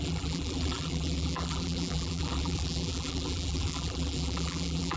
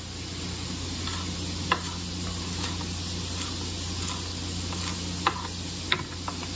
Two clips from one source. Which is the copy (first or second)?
first